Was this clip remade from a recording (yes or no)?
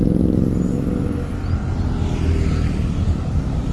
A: no